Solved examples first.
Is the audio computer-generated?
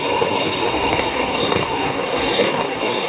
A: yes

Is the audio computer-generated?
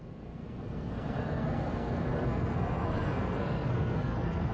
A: yes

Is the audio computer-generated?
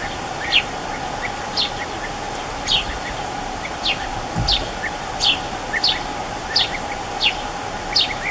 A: no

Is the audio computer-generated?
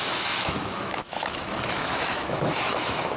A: yes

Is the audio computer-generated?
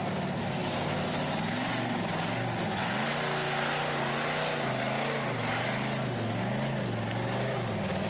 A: no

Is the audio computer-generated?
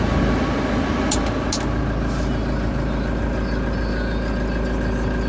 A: no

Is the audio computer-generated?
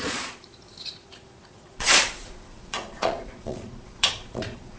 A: yes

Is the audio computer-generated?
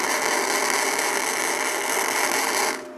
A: no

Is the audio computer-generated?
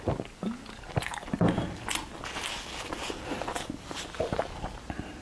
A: no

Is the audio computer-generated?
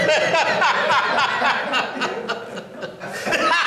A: no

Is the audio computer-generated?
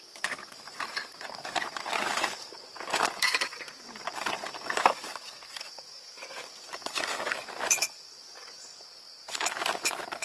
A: yes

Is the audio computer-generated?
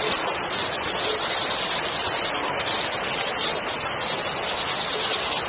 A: no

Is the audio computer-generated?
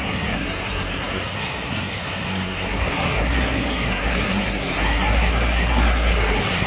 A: yes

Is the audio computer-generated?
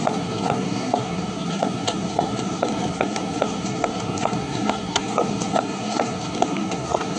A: yes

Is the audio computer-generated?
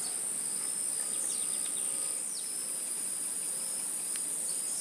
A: no